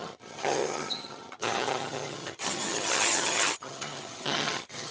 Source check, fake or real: fake